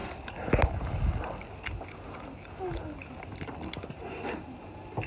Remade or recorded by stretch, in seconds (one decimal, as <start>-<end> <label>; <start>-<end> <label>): 0.0-5.1 recorded